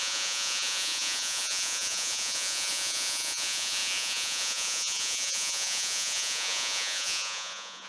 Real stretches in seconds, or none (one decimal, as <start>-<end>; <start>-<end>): none